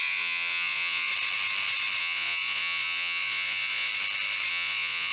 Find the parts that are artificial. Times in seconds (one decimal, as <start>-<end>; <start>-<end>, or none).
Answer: 0.0-1.1; 2.0-3.9; 4.5-5.1